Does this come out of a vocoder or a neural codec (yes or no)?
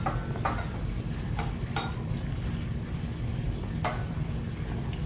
no